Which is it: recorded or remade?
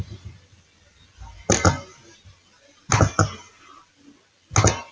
recorded